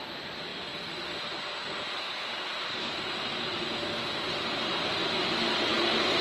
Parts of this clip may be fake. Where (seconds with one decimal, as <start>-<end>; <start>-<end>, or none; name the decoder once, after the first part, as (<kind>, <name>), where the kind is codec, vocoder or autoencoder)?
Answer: 2.5-4.7 (vocoder, BigVGAN v2); 5.7-6.2